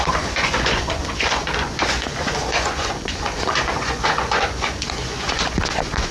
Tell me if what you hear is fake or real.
fake